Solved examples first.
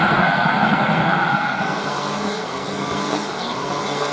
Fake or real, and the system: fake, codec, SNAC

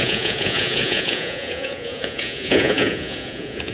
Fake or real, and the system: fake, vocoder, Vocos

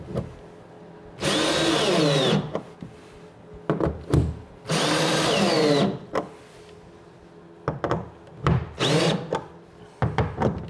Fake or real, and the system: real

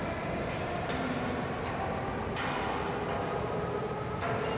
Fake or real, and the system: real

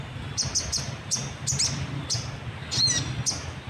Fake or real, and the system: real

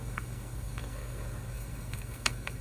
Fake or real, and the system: fake, codec, SNAC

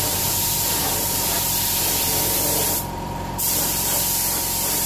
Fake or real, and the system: fake, vocoder, BigVGAN v2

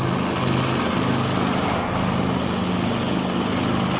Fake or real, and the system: real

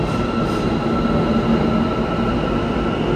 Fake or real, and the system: real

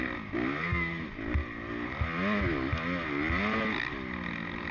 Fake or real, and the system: real